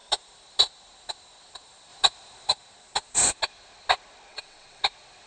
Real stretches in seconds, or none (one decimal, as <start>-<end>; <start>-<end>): 0.0-4.3; 4.8-5.3